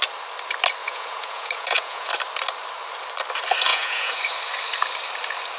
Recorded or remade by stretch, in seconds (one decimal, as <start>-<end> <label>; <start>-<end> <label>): 0.0-0.8 recorded; 0.8-2.1 remade; 2.1-3.7 recorded; 3.7-4.2 remade; 4.2-5.6 recorded

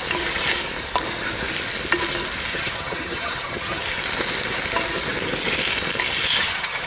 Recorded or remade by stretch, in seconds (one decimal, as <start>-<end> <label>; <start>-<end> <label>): 0.0-2.5 recorded; 2.5-3.8 remade; 3.8-6.3 recorded; 6.3-6.9 remade

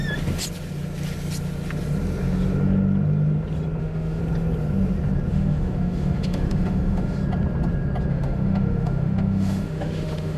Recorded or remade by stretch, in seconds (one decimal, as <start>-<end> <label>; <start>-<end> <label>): 0.0-3.8 recorded; 3.8-4.2 remade; 4.2-5.3 recorded; 5.3-7.2 remade; 7.2-8.1 recorded; 8.1-10.4 remade

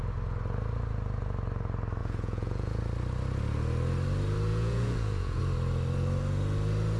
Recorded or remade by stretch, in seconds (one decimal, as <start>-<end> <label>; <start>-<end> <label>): 0.0-2.0 recorded; 2.0-2.8 remade; 2.8-4.5 recorded; 4.5-5.4 remade; 5.4-7.0 recorded

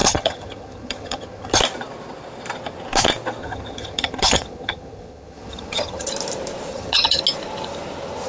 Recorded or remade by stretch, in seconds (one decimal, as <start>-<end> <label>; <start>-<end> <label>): 0.0-1.6 remade; 1.6-3.4 recorded; 3.4-6.1 remade; 6.1-6.7 recorded; 6.7-7.2 remade; 7.2-8.3 recorded

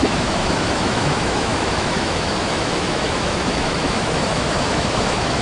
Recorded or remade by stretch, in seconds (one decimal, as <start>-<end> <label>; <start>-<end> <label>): 0.0-5.4 remade